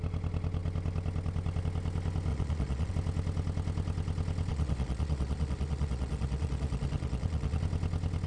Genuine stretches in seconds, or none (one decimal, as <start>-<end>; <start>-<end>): 0.0-2.3; 2.9-4.5; 7.6-8.3